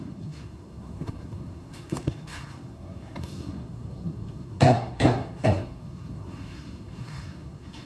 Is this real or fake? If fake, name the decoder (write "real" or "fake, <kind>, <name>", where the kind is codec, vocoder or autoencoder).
fake, codec, SNAC